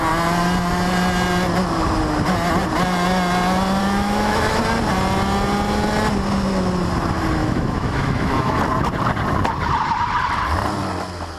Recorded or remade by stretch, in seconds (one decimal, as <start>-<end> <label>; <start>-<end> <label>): 0.0-3.8 recorded; 3.8-4.6 remade; 4.6-7.4 recorded; 7.4-8.6 remade; 8.6-11.4 recorded

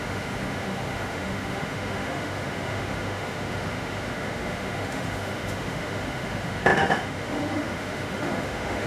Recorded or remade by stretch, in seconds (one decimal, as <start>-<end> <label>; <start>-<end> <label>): 0.0-8.9 remade

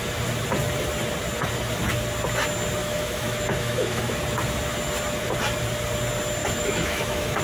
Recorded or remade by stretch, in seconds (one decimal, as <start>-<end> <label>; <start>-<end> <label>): 0.0-2.8 recorded; 2.8-4.0 remade; 4.0-6.4 recorded; 6.4-7.4 remade

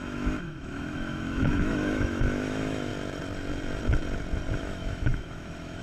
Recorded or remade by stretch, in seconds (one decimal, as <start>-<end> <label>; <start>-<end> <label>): 0.0-2.9 remade; 2.9-4.6 recorded; 4.6-5.8 remade

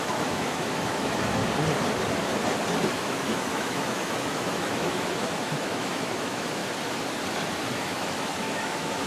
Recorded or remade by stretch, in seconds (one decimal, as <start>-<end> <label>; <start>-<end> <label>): 0.0-1.4 remade; 1.4-2.9 recorded; 2.9-6.6 remade; 6.6-7.8 recorded; 7.8-9.1 remade

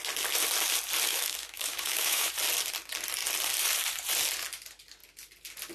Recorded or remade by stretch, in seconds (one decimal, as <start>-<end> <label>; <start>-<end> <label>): 0.0-1.1 recorded; 1.1-2.3 remade; 2.3-5.7 recorded

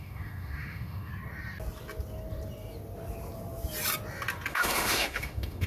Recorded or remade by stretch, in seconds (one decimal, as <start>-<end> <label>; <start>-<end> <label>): 0.0-1.1 remade; 1.1-4.5 recorded; 4.5-5.7 remade